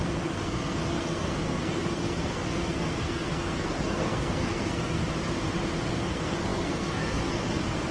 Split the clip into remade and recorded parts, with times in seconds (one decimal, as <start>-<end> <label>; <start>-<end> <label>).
0.0-5.0 remade; 5.0-5.9 recorded; 5.9-7.9 remade